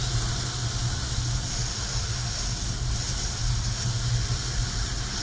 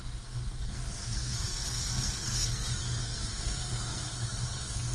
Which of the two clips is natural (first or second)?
first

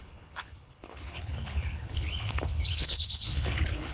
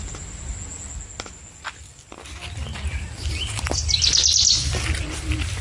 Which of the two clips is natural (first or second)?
second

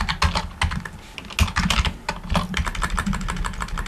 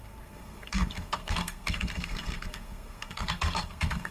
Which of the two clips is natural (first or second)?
first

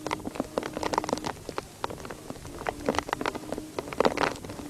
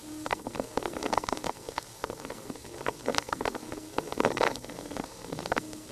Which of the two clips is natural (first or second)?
first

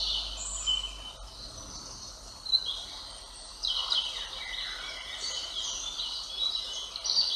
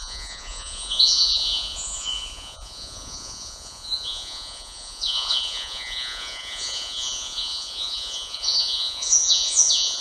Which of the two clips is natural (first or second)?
first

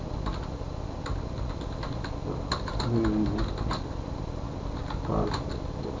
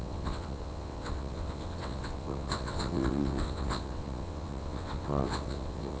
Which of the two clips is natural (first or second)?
first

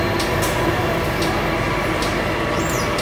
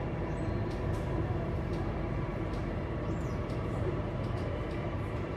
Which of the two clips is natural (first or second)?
first